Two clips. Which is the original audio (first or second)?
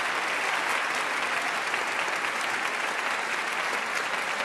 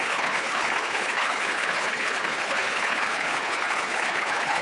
first